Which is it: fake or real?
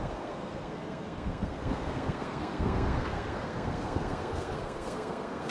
fake